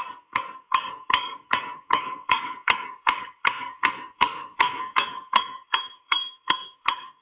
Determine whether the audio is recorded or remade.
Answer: remade